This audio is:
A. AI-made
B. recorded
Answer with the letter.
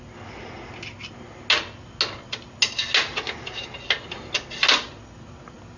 B